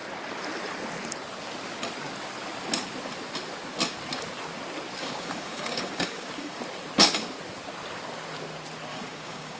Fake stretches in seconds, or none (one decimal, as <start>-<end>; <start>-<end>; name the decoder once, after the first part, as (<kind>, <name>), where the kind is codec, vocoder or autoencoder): 5.0-6.6 (codec, DAC); 8.9-9.6